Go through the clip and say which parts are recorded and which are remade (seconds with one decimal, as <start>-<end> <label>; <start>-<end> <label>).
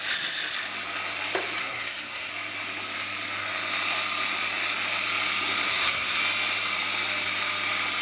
0.0-1.6 recorded; 1.6-2.3 remade; 2.3-5.7 recorded; 5.7-6.2 remade; 6.2-8.0 recorded